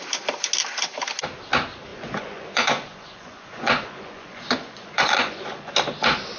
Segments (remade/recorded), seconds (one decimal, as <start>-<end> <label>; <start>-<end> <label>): 0.0-1.9 recorded; 1.9-5.7 remade; 5.7-6.4 recorded